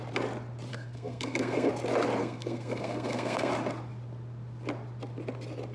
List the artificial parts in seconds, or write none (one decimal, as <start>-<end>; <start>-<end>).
0.7-1.7; 2.2-3.5